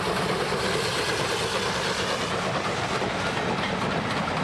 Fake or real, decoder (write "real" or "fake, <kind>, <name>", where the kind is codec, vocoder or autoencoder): real